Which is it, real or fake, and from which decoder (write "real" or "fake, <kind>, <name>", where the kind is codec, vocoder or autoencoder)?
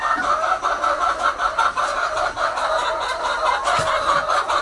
real